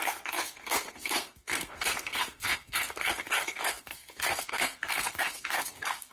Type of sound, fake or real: fake